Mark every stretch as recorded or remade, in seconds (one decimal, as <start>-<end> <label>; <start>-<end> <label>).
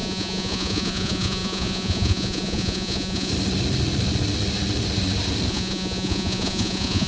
0.0-3.3 remade; 3.3-5.5 recorded; 5.5-7.1 remade